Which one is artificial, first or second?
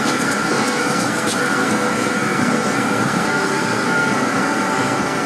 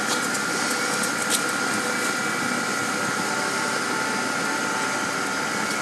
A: first